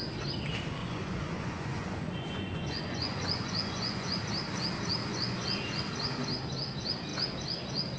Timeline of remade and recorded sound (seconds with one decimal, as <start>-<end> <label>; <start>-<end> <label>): 0.0-0.8 recorded; 0.8-4.2 remade; 4.2-5.0 recorded; 5.0-5.8 remade; 5.8-8.0 recorded